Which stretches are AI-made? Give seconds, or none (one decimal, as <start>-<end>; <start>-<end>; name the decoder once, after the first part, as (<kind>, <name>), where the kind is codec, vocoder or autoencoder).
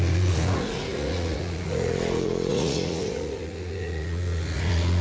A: 0.0-5.0 (vocoder, Vocos)